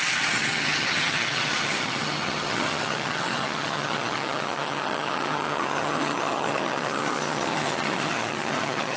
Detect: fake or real fake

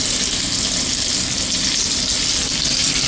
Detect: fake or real real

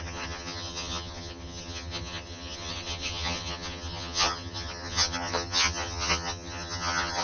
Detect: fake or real fake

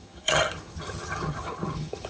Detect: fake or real fake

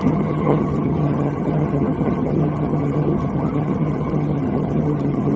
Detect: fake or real fake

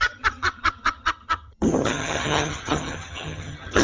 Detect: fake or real fake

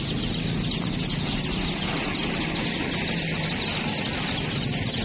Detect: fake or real real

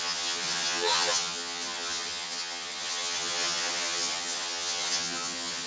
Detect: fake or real fake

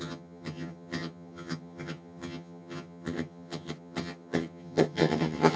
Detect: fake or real fake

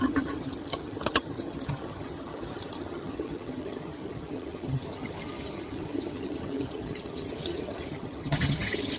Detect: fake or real fake